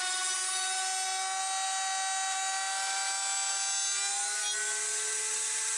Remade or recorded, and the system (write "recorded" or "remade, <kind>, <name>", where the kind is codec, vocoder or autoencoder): recorded